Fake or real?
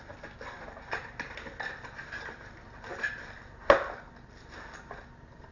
real